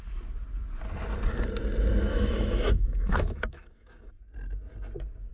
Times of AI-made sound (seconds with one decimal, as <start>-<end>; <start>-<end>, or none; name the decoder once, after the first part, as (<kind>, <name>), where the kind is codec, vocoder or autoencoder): 2.1-4.1 (autoencoder, DAC-VAE)